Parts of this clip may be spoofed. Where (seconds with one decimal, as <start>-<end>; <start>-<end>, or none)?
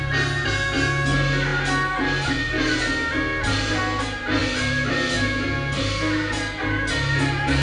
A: none